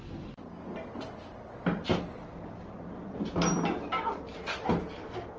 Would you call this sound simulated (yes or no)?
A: no